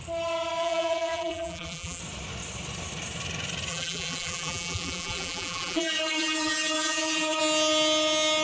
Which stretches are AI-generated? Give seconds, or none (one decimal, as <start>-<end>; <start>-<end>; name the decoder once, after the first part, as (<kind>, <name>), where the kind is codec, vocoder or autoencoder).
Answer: 0.6-2.0 (vocoder, BigVGAN v2); 3.7-7.4